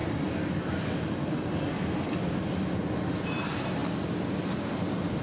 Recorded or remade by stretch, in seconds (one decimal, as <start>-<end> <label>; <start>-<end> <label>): 0.0-5.2 recorded